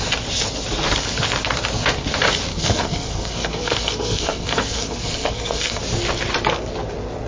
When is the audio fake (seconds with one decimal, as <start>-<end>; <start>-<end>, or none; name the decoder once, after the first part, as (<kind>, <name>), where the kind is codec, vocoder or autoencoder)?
2.5-5.8 (codec, SNAC)